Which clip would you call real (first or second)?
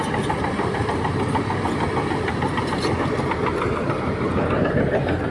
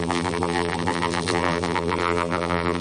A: first